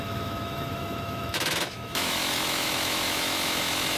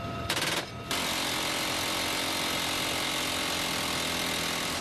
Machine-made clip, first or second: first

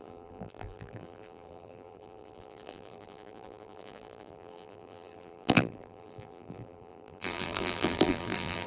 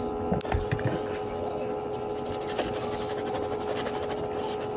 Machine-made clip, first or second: first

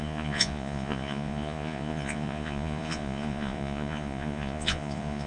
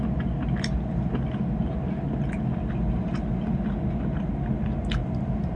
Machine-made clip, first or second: first